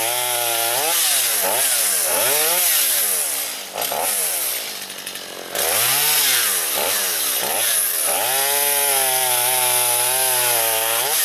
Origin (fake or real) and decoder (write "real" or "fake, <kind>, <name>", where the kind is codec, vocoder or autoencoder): real